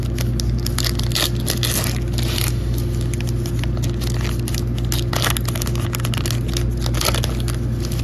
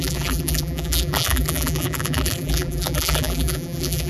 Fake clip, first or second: second